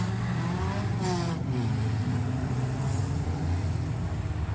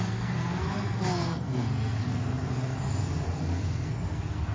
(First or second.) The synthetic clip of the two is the second